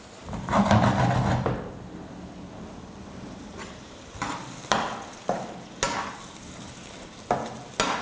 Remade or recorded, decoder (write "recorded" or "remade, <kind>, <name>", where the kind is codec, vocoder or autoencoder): recorded